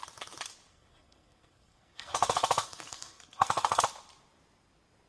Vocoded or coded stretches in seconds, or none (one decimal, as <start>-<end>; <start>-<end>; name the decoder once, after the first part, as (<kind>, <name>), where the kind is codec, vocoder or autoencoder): 0.7-3.8 (codec, SNAC)